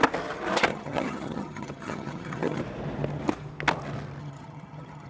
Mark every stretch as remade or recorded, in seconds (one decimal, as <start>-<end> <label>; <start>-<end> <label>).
0.0-0.7 recorded; 0.7-2.6 remade; 2.6-4.2 recorded; 4.2-5.1 remade

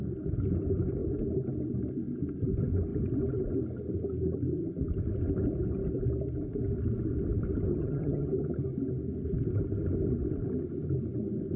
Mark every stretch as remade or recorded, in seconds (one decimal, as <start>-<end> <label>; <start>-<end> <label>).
0.0-7.7 recorded; 7.7-8.3 remade; 8.3-11.6 recorded